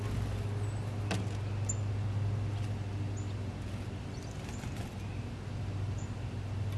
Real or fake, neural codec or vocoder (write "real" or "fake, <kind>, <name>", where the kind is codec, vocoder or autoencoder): real